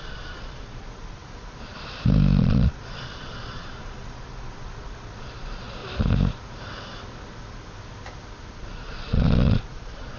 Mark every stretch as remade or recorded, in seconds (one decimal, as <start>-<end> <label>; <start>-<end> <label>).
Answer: 0.0-1.2 remade; 1.2-2.4 recorded; 2.4-5.8 remade; 5.8-8.5 recorded; 8.5-10.2 remade